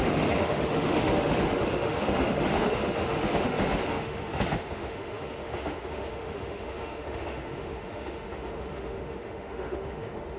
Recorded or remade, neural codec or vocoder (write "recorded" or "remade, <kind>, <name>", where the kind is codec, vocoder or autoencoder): remade, autoencoder, DAC-VAE